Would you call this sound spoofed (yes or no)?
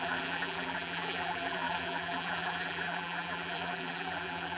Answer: yes